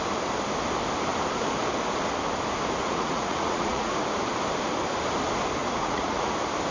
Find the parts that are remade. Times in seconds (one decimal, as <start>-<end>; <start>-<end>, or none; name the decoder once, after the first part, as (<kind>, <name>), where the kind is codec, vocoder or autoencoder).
2.8-3.9 (vocoder, Vocos); 5.6-6.3